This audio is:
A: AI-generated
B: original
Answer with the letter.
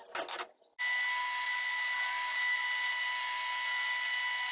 B